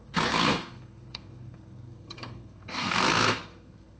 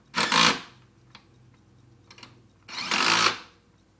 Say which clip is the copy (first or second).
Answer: first